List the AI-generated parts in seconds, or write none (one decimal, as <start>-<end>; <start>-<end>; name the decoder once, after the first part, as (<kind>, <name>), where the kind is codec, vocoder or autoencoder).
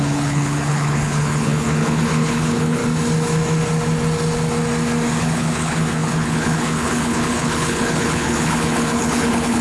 0.0-2.8 (codec, HILCodec); 5.2-9.6